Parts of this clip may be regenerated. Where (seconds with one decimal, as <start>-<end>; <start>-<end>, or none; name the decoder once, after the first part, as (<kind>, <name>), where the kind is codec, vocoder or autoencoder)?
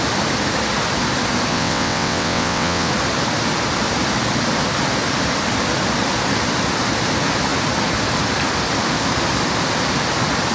1.5-2.9 (vocoder, WaveNeXt)